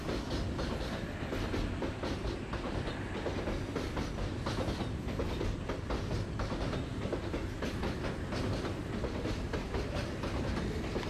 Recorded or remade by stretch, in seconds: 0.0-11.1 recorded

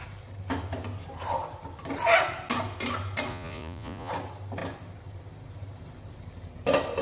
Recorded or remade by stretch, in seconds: 0.0-3.3 recorded; 3.3-4.1 remade; 4.1-7.0 recorded